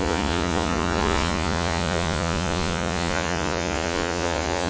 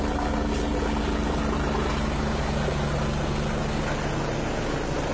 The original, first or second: second